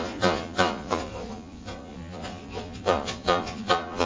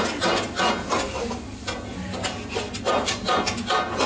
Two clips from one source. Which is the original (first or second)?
second